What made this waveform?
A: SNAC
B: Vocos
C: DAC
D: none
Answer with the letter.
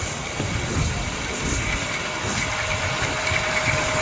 D